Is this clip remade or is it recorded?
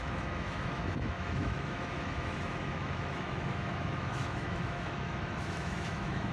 remade